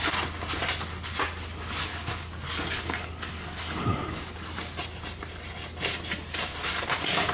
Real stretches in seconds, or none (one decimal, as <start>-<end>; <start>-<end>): 0.0-1.9; 4.2-7.3

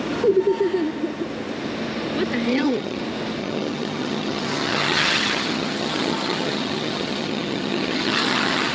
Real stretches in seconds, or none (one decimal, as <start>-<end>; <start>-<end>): 0.0-2.5; 3.0-3.4

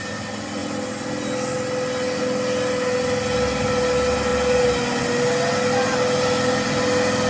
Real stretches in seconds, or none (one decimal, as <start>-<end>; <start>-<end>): 0.0-7.3

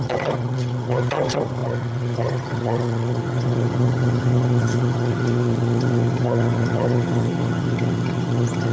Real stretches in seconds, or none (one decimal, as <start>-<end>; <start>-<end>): none